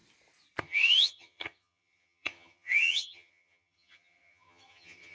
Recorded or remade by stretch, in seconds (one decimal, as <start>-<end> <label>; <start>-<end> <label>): 0.0-0.6 recorded; 0.6-5.1 remade